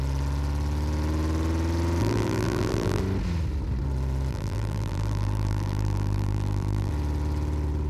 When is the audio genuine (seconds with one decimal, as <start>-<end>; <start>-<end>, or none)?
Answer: 0.0-2.0; 3.0-4.3; 6.9-7.9